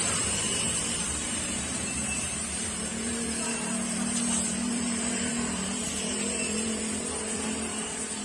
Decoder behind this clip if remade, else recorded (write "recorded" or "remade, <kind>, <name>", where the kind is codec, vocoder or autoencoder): remade, vocoder, BigVGAN v2